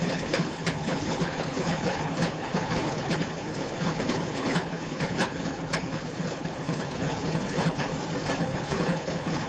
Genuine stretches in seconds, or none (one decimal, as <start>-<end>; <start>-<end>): 7.9-8.4